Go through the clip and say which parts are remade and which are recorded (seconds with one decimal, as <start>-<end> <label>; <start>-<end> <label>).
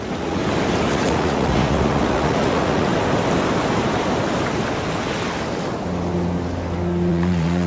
0.0-0.4 remade; 0.4-0.9 recorded; 0.9-2.9 remade; 2.9-7.1 recorded; 7.1-7.7 remade